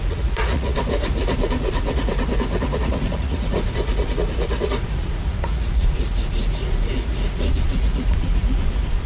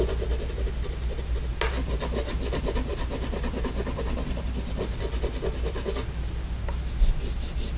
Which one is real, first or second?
second